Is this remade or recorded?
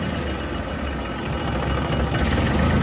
recorded